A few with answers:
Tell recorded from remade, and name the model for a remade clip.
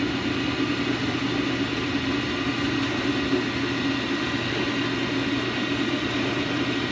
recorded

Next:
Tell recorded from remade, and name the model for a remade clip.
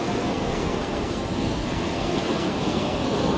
remade, codec, SNAC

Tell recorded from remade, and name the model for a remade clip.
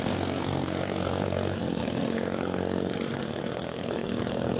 remade, codec, SNAC